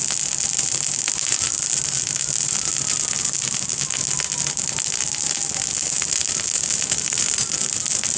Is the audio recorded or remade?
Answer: recorded